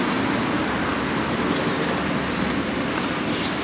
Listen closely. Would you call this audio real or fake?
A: real